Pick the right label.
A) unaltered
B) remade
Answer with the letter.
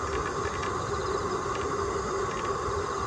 A